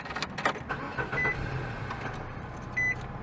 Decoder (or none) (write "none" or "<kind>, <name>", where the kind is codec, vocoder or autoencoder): none